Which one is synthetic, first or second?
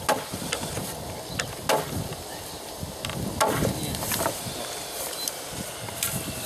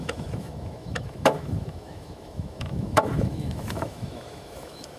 second